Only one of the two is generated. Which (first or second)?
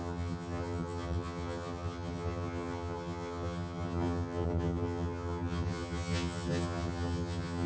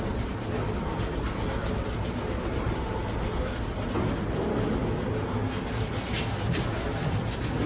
first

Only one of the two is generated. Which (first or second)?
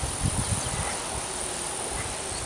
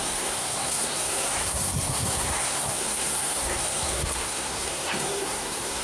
second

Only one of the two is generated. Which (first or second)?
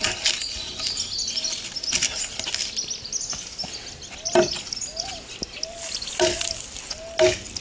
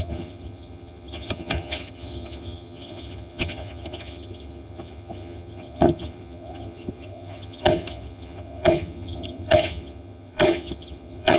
second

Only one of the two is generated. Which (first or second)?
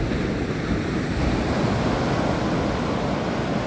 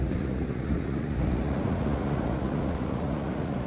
second